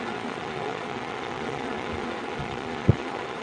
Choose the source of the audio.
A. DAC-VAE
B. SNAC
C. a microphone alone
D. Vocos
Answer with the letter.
D